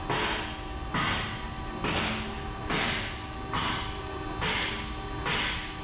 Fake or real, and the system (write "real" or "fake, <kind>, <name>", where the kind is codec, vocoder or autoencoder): real